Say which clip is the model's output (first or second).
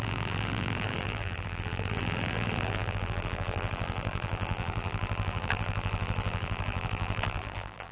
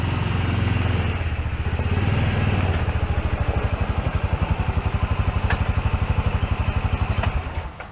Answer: first